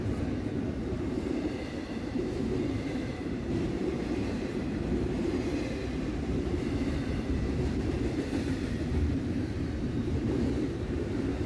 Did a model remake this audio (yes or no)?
yes